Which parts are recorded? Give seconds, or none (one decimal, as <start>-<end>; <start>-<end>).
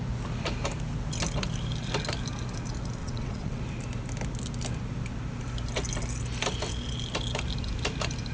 0.0-3.0; 3.6-8.3